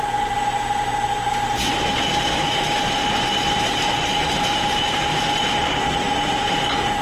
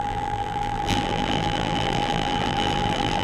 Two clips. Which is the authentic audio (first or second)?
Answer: first